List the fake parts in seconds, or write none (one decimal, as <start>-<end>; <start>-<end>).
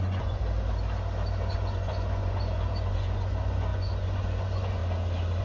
0.0-0.4; 1.5-4.8